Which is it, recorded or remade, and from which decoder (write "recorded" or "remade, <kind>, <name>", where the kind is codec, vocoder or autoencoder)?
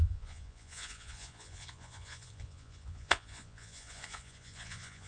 remade, vocoder, Vocos